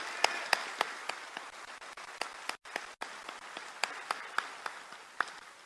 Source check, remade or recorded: recorded